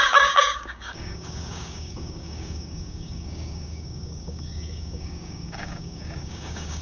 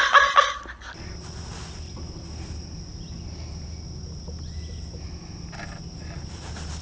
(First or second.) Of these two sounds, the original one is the second